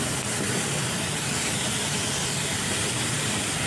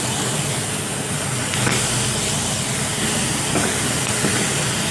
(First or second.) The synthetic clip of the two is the first